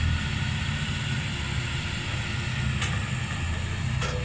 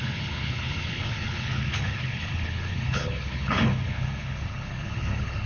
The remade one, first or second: second